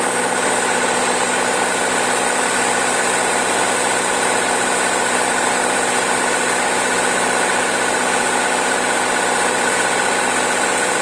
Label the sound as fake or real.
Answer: real